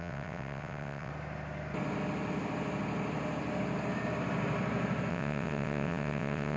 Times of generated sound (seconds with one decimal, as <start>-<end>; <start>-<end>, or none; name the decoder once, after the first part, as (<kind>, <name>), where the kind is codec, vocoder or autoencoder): 0.0-1.1 (vocoder, WaveNeXt); 5.1-6.6